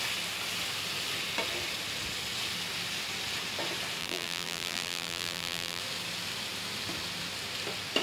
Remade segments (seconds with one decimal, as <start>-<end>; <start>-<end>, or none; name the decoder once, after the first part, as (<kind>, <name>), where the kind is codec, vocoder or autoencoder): 4.0-5.8 (vocoder, BigVGAN v2)